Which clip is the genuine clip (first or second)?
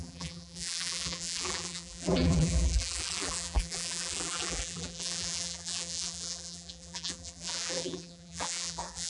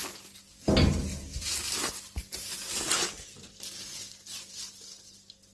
second